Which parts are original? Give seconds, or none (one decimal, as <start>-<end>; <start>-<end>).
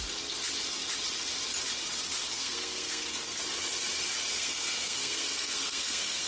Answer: 0.0-2.3; 3.4-4.3